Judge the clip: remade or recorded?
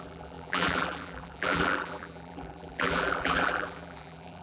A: remade